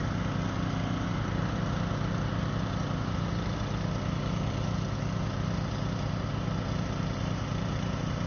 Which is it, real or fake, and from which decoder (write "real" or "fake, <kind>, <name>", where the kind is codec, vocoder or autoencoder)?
real